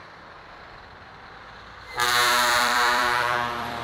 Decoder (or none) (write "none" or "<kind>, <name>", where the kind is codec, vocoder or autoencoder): vocoder, BigVGAN v2